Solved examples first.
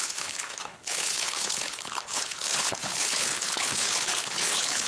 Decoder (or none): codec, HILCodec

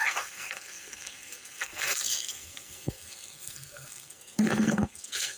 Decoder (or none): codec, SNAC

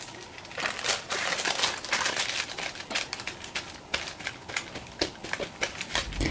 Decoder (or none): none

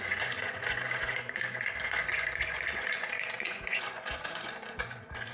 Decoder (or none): vocoder, Vocos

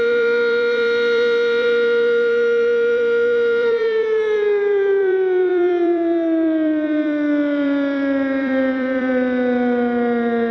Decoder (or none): vocoder, BigVGAN v2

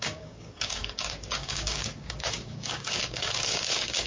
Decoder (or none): codec, DAC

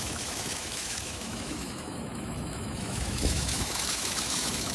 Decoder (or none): autoencoder, DAC-VAE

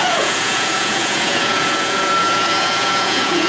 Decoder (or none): vocoder, Vocos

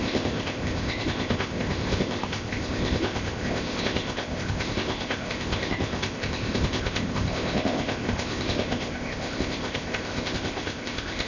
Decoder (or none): codec, ZipCodec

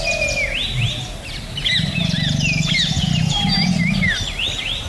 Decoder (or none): none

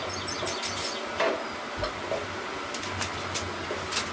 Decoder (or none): none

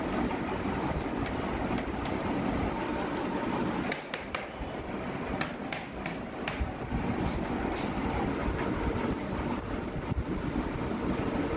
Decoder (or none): none